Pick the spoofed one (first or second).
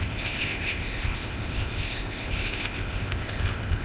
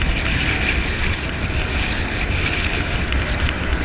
first